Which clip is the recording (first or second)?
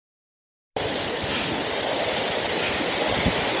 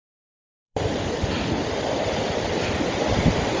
first